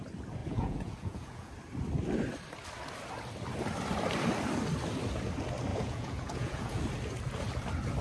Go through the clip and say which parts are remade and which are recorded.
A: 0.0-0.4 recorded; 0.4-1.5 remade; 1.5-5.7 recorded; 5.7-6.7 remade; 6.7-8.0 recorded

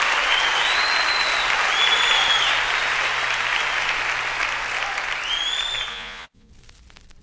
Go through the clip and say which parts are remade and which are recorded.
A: 0.0-5.9 recorded; 5.9-6.5 remade; 6.5-7.2 recorded

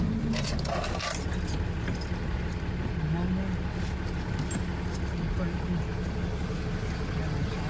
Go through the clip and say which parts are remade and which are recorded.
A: 0.0-7.7 recorded

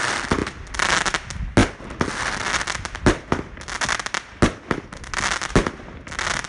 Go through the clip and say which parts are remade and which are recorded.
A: 0.0-0.4 recorded; 0.4-0.9 remade; 0.9-6.5 recorded

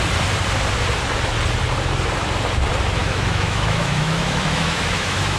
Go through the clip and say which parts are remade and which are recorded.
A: 0.0-3.0 recorded; 3.0-5.4 remade

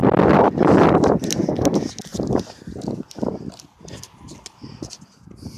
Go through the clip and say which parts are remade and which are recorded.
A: 0.0-2.1 remade; 2.1-5.6 recorded

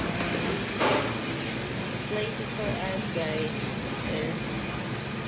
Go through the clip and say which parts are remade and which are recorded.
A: 0.0-0.9 remade; 0.9-2.3 recorded; 2.3-5.3 remade